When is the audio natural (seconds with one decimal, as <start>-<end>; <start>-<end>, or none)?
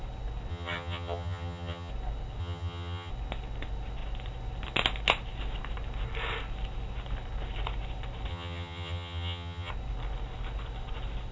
0.0-0.5; 1.9-2.4; 3.1-8.3; 9.7-11.3